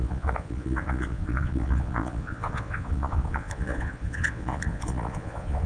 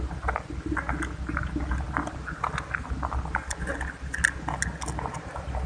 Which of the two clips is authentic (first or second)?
second